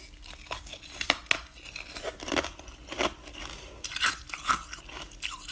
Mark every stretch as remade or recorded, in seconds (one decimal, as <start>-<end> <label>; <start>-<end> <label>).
0.0-5.5 recorded

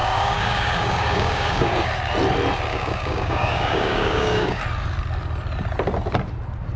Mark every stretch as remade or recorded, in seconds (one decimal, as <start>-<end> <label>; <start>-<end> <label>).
0.0-1.9 remade; 1.9-2.7 recorded; 2.7-4.6 remade; 4.6-6.8 recorded

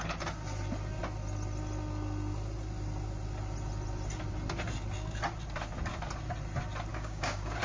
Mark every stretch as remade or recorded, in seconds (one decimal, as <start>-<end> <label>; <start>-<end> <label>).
0.0-6.9 recorded; 6.9-7.6 remade

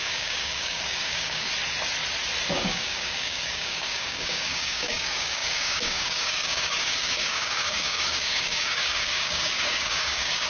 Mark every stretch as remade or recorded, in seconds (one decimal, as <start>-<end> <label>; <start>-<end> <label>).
0.0-1.5 remade; 1.5-2.5 recorded; 2.5-10.5 remade

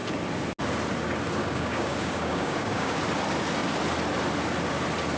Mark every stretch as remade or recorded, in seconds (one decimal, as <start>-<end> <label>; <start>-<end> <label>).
0.0-1.4 recorded; 1.4-3.0 remade; 3.0-5.2 recorded

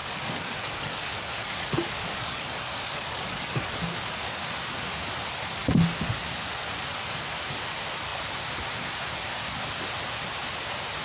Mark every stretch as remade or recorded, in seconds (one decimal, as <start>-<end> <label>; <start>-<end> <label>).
0.0-4.4 remade; 4.4-11.0 recorded

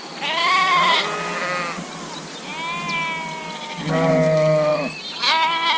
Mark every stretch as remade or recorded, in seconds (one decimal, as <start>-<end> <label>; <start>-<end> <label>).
0.0-5.8 recorded